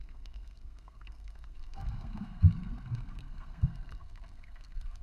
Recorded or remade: remade